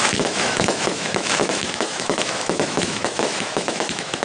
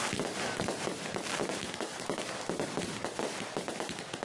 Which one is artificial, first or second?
first